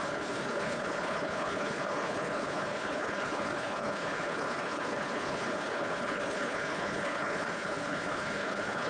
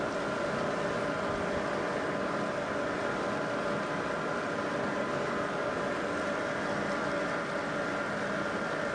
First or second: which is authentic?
second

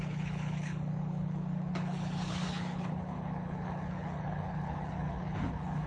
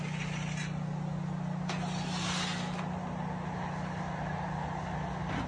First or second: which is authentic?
second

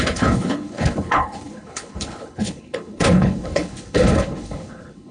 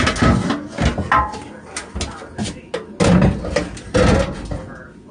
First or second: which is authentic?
second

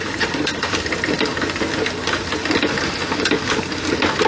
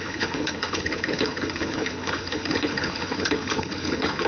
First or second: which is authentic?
first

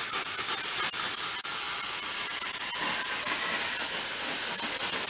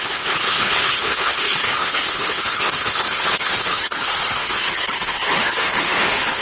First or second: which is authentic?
first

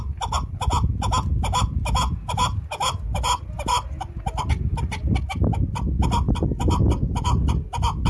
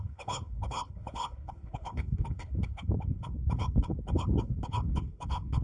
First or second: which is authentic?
first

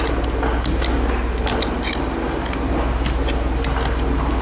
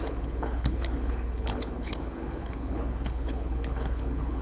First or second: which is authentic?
first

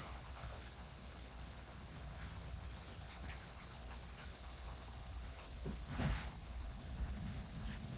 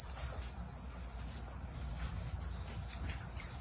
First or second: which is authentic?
second